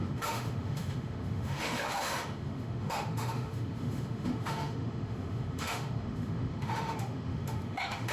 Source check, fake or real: fake